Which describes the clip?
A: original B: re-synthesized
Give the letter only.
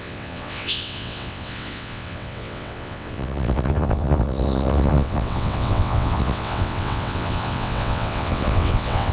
B